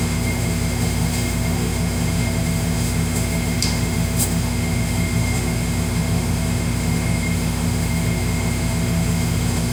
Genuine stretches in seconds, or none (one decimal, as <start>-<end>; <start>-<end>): none